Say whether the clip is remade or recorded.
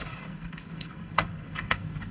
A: remade